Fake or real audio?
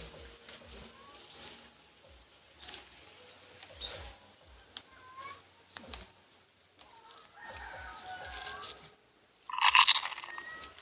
real